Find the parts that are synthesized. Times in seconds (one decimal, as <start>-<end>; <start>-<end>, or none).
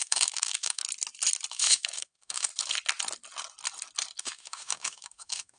0.0-0.8; 1.5-2.5; 4.2-5.6